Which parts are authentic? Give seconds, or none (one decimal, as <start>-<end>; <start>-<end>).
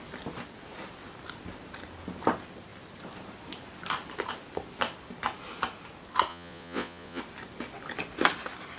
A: 0.0-6.3; 7.2-8.8